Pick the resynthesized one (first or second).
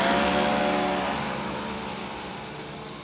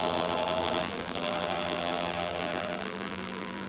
second